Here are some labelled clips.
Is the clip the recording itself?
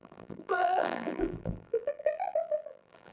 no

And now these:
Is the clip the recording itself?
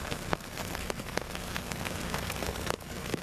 no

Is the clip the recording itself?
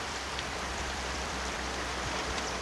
no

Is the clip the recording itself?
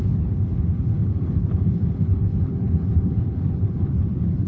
no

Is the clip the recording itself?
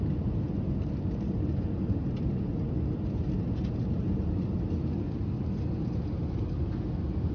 yes